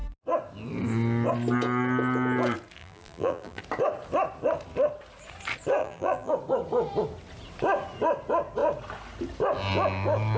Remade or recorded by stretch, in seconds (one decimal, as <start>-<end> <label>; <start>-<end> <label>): 0.0-2.8 recorded; 2.8-3.6 remade; 3.6-5.8 recorded; 5.8-6.3 remade; 6.3-10.4 recorded